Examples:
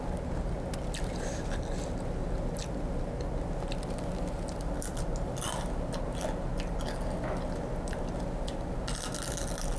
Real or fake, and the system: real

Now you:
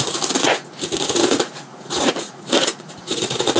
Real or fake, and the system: fake, vocoder, Vocos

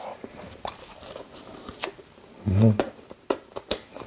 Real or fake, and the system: fake, vocoder, BigVGAN v2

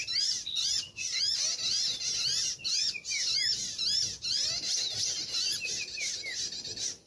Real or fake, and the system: real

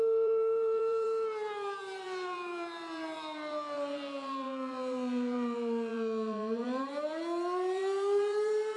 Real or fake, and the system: fake, vocoder, BigVGAN v2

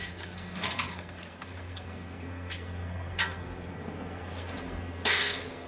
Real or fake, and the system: fake, codec, SNAC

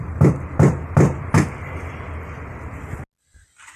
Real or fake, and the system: real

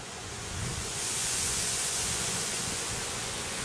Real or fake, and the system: fake, vocoder, Vocos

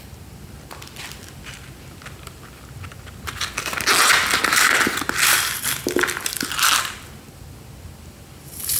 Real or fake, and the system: real